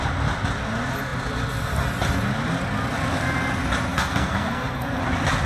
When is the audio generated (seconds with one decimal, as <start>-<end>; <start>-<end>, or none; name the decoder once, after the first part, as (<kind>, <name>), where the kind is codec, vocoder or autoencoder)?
3.9-5.0 (codec, SNAC)